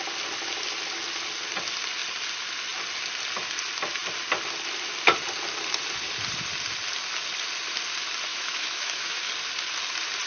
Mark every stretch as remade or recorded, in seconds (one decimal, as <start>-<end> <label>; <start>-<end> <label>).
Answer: 0.0-8.3 recorded; 8.3-9.3 remade; 9.3-10.3 recorded